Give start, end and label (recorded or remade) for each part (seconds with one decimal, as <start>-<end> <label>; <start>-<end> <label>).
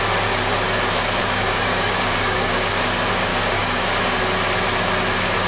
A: 0.0-1.2 recorded; 1.2-2.7 remade; 2.7-3.3 recorded; 3.3-4.2 remade; 4.2-5.5 recorded